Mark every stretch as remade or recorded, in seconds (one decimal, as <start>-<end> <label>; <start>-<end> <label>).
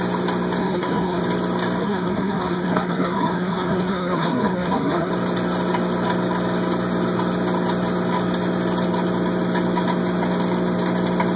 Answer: 0.0-0.6 recorded; 0.6-1.2 remade; 1.2-1.8 recorded; 1.8-5.1 remade; 5.1-11.4 recorded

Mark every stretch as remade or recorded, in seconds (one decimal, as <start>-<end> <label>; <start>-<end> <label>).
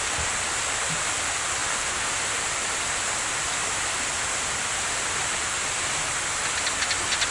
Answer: 0.0-7.3 recorded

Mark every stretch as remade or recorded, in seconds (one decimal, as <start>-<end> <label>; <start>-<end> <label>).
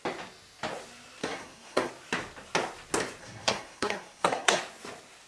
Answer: 0.0-1.2 recorded; 1.2-1.9 remade; 1.9-3.2 recorded; 3.2-4.6 remade; 4.6-5.3 recorded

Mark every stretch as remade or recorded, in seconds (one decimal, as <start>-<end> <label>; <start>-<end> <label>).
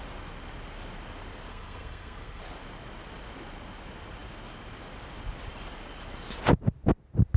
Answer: 0.0-1.5 recorded; 1.5-2.4 remade; 2.4-7.4 recorded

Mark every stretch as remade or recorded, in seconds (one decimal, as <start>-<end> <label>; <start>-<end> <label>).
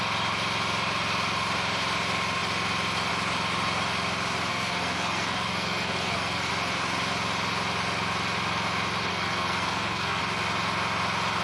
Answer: 0.0-4.5 recorded; 4.5-6.5 remade; 6.5-9.1 recorded; 9.1-10.2 remade; 10.2-11.4 recorded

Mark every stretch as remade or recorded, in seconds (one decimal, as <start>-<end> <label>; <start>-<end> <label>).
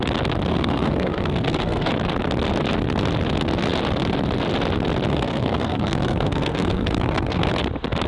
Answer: 0.0-0.5 recorded; 0.5-1.9 remade; 1.9-5.1 recorded; 5.1-7.5 remade; 7.5-8.1 recorded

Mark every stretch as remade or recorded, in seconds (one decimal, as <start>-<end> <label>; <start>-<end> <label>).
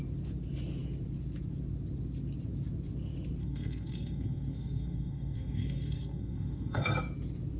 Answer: 0.0-3.4 recorded; 3.4-7.0 remade; 7.0-7.6 recorded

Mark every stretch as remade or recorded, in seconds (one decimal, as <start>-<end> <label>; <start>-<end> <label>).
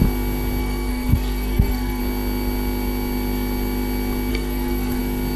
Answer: 0.0-0.6 recorded; 0.6-2.0 remade; 2.0-4.3 recorded; 4.3-5.0 remade; 5.0-5.4 recorded